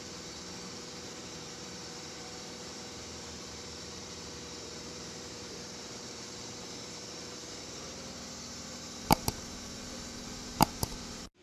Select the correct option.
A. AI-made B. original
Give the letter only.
A